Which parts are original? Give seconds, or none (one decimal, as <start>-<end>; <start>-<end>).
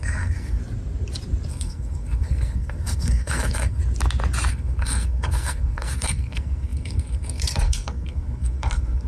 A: 0.6-1.5; 3.8-4.5